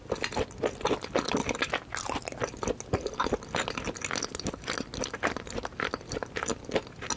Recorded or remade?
recorded